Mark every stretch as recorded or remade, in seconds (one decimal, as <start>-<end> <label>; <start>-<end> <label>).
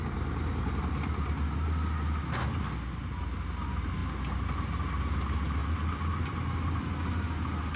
0.0-7.8 recorded